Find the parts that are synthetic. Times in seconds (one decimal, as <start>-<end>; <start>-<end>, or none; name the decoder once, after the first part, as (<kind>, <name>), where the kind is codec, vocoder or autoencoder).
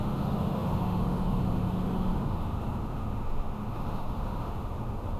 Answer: 0.0-5.2 (autoencoder, DAC-VAE)